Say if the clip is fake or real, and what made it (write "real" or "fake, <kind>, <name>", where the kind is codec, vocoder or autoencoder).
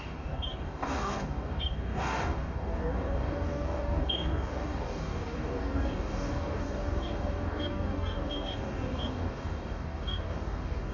fake, codec, DAC